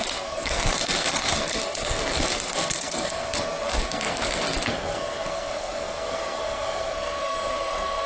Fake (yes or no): yes